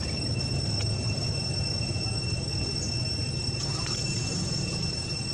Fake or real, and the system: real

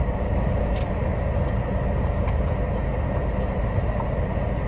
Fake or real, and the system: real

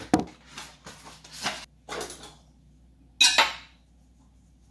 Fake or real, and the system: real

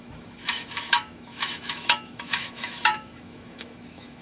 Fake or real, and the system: fake, autoencoder, DAC-VAE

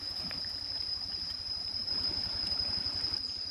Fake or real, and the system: fake, vocoder, BigVGAN v2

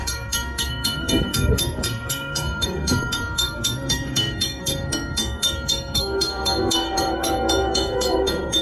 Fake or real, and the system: fake, codec, SNAC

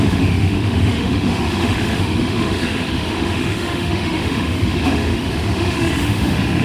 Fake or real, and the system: fake, autoencoder, DAC-VAE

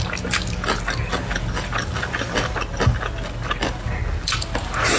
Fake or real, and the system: real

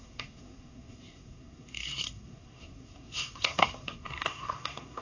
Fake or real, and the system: fake, codec, SNAC